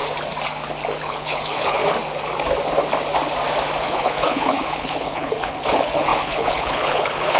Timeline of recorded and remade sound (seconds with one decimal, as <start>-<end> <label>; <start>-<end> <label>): 0.0-1.0 recorded; 1.0-1.8 remade; 1.8-3.8 recorded; 3.8-7.4 remade